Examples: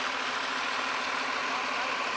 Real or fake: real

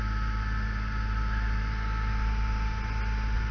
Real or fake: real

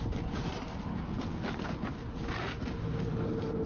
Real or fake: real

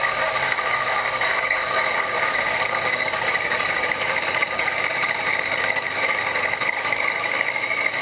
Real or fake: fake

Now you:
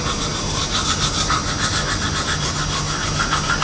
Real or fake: real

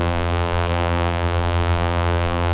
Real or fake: fake